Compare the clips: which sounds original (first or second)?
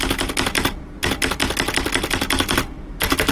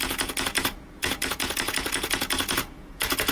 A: first